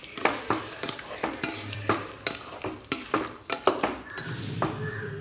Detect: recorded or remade remade